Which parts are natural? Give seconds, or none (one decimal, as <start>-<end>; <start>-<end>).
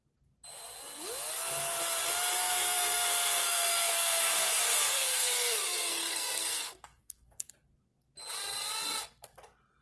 0.0-2.4; 7.5-9.8